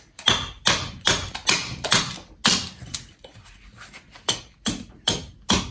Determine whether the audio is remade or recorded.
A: recorded